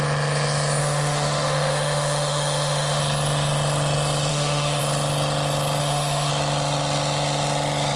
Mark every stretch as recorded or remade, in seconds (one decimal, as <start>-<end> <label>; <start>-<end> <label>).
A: 0.0-0.8 recorded; 0.8-3.0 remade; 3.0-4.3 recorded; 4.3-4.8 remade; 4.8-5.8 recorded; 5.8-6.3 remade; 6.3-8.0 recorded